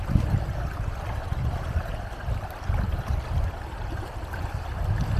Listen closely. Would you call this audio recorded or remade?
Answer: recorded